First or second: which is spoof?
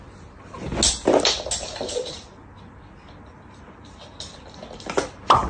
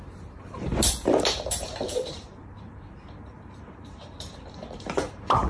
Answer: second